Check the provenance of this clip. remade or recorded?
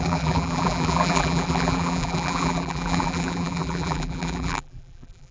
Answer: remade